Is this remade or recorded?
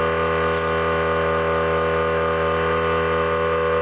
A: recorded